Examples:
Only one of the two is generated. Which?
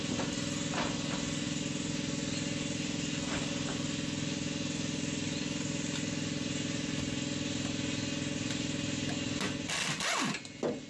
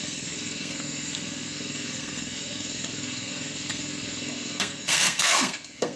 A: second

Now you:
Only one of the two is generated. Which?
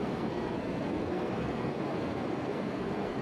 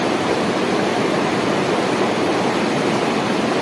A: first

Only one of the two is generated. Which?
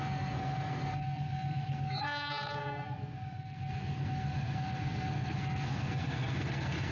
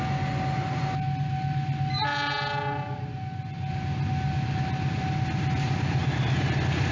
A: first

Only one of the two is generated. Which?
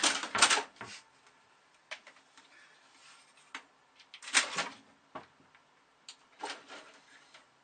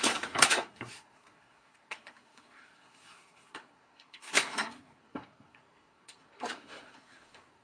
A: second